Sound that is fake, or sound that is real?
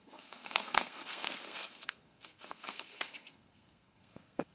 fake